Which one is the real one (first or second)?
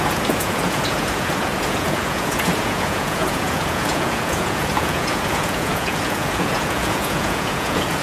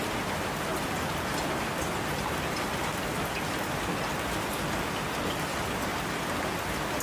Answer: second